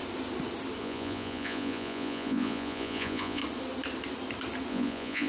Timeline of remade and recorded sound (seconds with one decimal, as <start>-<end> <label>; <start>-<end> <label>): 0.0-0.8 recorded; 0.8-3.4 remade; 3.4-4.7 recorded; 4.7-5.3 remade